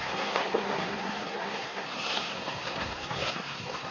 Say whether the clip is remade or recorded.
remade